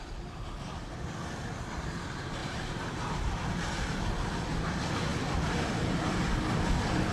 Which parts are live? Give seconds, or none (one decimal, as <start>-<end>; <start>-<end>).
0.0-2.4; 4.0-7.1